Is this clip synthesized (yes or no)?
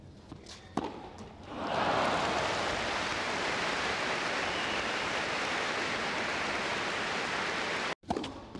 no